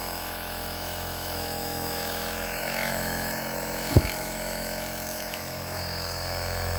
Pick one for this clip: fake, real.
fake